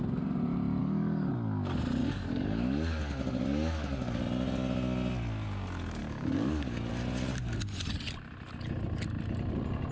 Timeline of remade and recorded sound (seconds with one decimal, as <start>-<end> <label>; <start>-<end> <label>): 0.0-0.8 recorded; 0.8-1.3 remade; 1.3-2.0 recorded; 2.0-4.2 remade; 4.2-6.0 recorded; 6.0-6.9 remade; 6.9-9.9 recorded